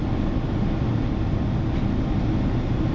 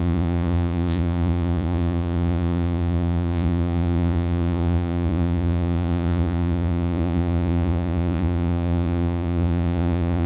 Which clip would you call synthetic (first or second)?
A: second